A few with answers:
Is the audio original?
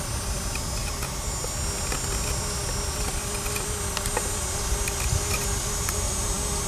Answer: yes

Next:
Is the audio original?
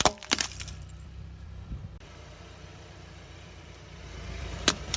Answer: no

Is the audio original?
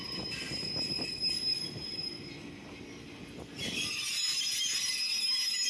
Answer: yes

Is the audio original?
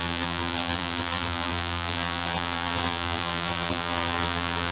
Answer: no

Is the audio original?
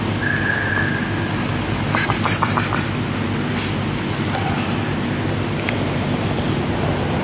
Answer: yes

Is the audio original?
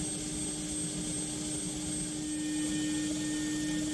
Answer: yes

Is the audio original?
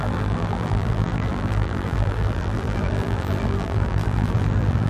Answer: no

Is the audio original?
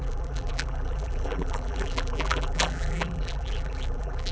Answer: no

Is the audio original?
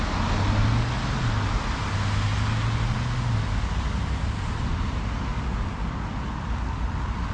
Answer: yes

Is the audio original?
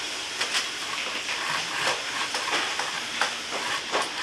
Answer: yes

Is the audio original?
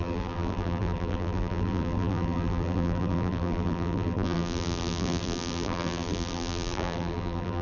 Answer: no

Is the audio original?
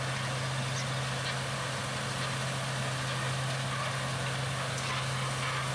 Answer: yes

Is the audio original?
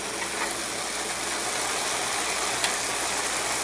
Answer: yes